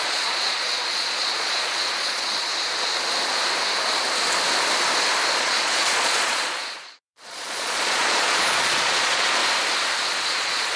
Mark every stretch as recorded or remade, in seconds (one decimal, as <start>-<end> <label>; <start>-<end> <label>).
0.0-2.5 remade; 2.5-5.4 recorded; 5.4-9.4 remade; 9.4-10.1 recorded; 10.1-10.8 remade